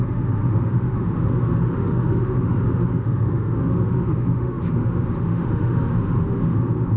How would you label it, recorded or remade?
remade